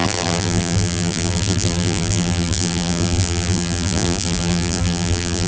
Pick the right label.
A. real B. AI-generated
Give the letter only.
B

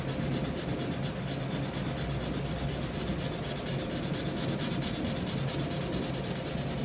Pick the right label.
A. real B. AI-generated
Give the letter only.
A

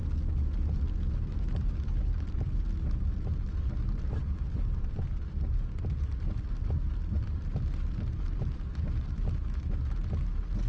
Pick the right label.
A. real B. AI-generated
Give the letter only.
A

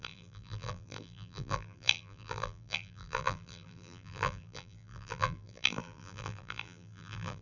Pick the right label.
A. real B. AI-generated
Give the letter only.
B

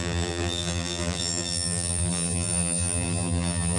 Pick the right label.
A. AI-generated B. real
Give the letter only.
A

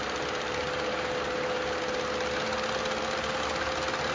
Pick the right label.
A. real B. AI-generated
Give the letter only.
A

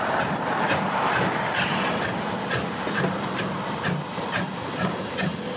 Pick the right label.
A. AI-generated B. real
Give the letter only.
B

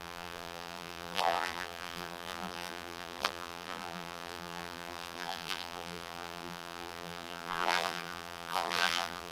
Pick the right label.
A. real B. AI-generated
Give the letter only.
B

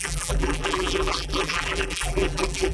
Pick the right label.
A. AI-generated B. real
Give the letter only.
A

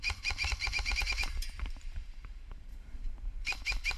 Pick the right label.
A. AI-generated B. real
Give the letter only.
A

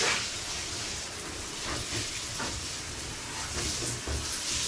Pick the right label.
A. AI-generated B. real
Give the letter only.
B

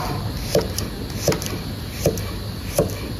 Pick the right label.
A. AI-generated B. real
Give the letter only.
B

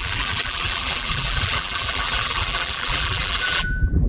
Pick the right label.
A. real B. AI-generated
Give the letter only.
B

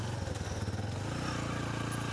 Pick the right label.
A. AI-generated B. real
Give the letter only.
B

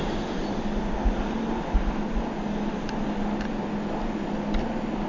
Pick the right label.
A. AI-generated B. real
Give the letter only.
B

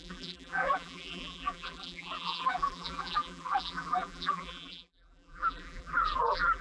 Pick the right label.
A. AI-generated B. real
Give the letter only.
A